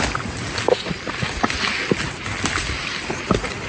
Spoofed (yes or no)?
no